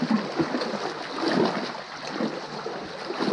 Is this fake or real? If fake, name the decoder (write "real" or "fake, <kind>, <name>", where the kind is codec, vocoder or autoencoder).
real